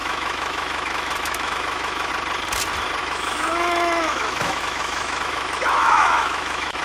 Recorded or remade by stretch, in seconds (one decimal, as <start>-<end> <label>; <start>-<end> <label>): 0.0-2.1 remade; 2.1-3.0 recorded; 3.0-6.8 remade